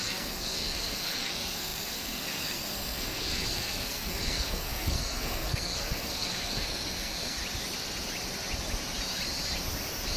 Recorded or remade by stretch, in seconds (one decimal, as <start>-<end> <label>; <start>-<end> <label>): 0.0-7.4 remade; 7.4-10.2 recorded